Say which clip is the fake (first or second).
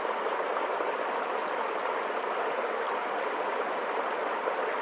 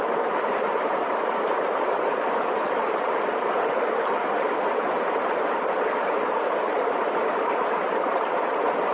second